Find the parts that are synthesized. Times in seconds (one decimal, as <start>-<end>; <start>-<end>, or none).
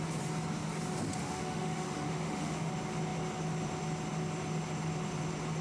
1.2-2.7